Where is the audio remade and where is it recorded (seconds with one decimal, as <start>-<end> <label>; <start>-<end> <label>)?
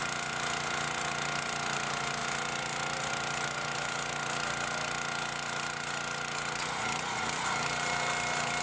0.0-8.6 recorded